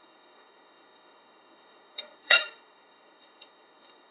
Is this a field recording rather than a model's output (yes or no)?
no